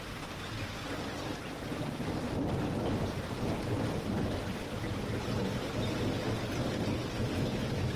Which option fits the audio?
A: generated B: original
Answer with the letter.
B